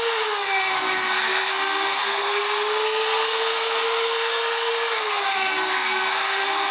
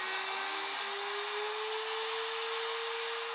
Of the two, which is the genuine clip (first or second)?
second